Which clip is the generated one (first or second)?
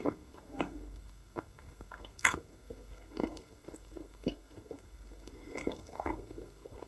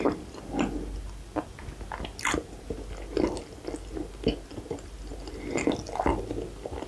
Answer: first